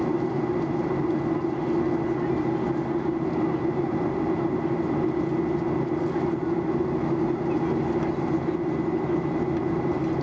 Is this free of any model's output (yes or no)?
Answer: yes